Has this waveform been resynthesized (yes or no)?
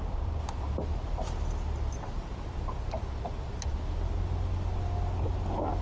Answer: no